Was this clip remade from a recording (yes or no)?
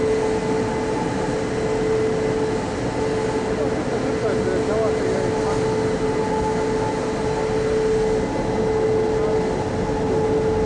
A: no